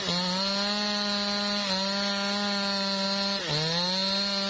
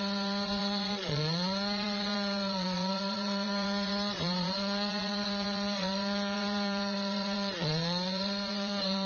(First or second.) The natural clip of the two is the first